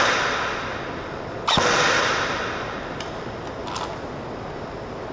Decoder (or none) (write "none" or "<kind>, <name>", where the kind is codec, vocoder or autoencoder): none